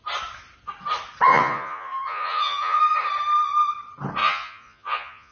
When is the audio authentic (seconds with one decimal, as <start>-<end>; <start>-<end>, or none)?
0.0-1.3; 2.8-4.2